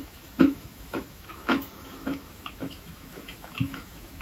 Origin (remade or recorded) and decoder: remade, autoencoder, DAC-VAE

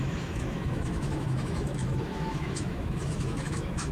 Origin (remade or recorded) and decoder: remade, autoencoder, DAC-VAE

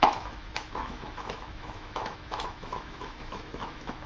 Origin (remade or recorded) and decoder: remade, autoencoder, DAC-VAE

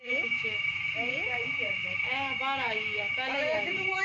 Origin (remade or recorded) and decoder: remade, autoencoder, DAC-VAE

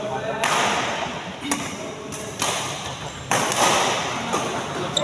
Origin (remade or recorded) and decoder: recorded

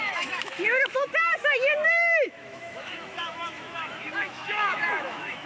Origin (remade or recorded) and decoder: remade, autoencoder, DAC-VAE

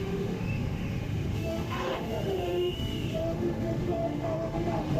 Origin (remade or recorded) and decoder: remade, autoencoder, DAC-VAE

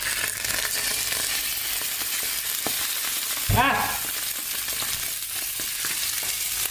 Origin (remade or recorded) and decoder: recorded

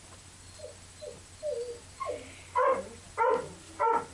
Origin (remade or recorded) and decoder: recorded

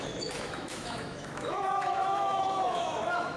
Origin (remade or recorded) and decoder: remade, autoencoder, DAC-VAE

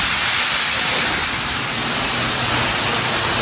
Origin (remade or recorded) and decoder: recorded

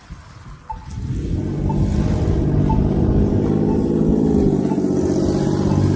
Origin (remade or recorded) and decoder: recorded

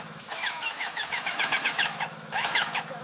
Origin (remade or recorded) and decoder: remade, autoencoder, DAC-VAE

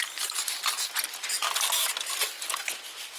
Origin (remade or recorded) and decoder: recorded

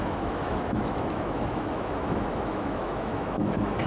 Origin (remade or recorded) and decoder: remade, autoencoder, DAC-VAE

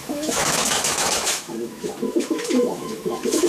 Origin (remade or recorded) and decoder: remade, autoencoder, DAC-VAE